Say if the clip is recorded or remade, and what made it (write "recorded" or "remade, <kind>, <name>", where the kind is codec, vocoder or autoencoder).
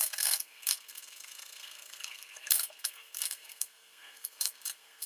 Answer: remade, codec, SNAC